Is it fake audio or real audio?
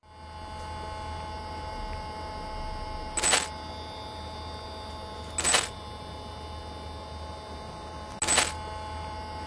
real